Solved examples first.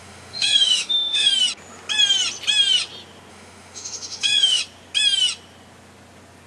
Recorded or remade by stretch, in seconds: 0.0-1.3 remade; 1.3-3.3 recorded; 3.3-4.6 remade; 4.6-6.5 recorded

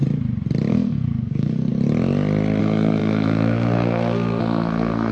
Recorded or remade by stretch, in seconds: 0.0-0.7 recorded; 0.7-1.7 remade; 1.7-2.6 recorded; 2.6-5.1 remade

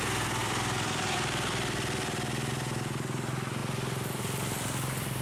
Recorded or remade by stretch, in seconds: 0.0-0.4 recorded; 0.4-2.5 remade; 2.5-3.6 recorded; 3.6-4.2 remade; 4.2-5.2 recorded

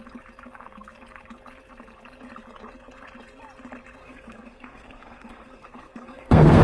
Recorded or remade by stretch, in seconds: 0.0-4.0 recorded; 4.0-6.6 remade

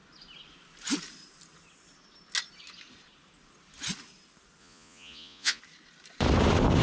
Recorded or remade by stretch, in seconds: 0.0-4.6 recorded; 4.6-5.6 remade; 5.6-6.8 recorded